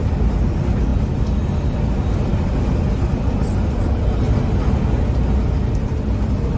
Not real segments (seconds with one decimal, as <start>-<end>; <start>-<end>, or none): none

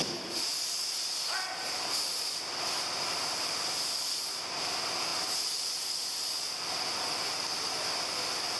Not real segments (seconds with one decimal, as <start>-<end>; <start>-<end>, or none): none

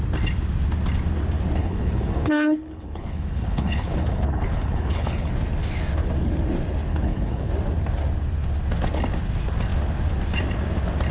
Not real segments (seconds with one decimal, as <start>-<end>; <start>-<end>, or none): 1.6-5.3; 6.9-7.5

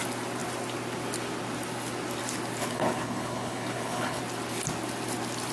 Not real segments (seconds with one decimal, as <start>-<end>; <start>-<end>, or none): 2.6-4.2

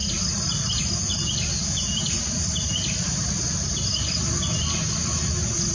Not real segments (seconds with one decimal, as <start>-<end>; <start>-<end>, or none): none